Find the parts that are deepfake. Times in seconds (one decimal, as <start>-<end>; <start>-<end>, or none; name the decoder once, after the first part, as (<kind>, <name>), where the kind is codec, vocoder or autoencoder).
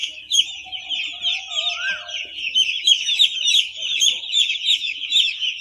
0.0-0.8 (autoencoder, DAC-VAE); 2.2-5.6